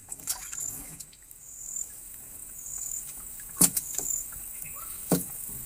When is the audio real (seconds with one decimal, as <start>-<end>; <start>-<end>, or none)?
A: none